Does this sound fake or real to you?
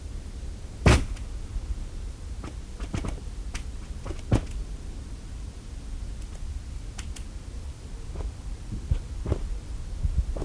real